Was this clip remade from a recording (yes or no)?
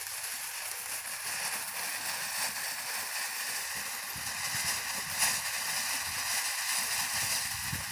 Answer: no